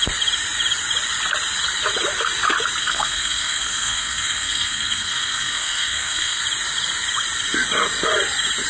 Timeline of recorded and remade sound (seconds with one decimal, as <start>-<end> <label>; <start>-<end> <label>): 0.0-2.8 recorded; 2.8-6.4 remade; 6.4-8.7 recorded